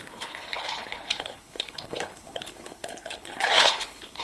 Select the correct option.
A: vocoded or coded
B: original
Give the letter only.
A